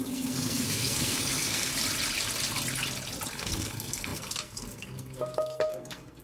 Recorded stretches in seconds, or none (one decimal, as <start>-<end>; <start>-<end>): 1.7-3.3